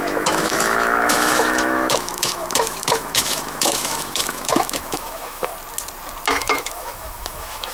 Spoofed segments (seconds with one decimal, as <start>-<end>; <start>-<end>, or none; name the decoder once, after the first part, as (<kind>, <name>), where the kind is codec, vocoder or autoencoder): 0.0-5.5 (autoencoder, DAC-VAE); 6.3-7.7